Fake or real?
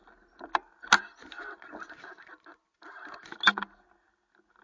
real